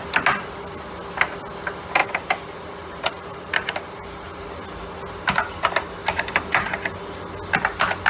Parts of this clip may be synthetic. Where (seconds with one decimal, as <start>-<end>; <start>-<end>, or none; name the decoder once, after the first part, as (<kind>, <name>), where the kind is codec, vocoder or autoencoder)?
2.0-4.5 (vocoder, BigVGAN v2); 6.0-6.9